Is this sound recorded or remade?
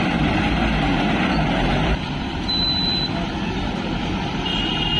remade